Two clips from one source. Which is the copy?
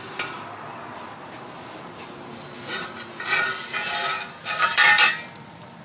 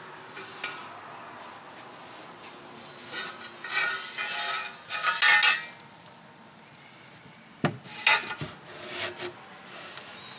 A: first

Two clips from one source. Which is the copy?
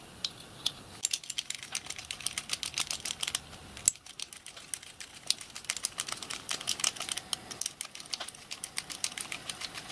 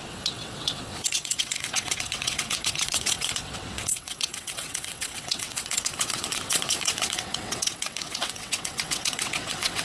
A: second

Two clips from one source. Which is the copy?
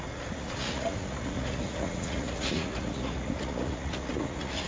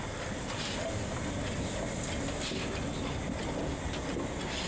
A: first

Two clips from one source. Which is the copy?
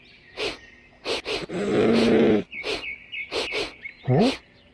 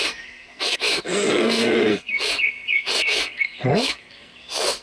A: second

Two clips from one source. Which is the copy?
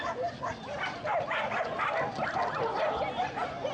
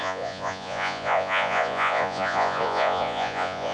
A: second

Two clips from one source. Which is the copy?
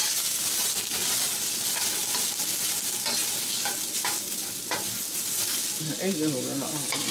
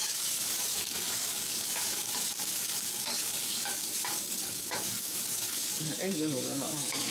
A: second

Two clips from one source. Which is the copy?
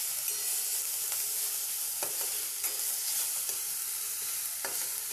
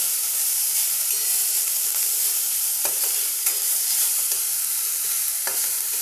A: second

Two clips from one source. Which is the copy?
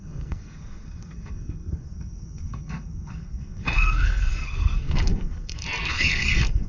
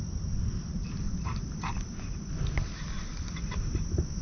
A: first